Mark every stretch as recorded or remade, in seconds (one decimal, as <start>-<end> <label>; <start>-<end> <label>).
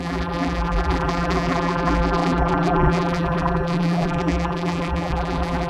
0.0-5.7 remade